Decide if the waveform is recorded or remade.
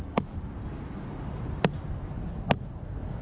recorded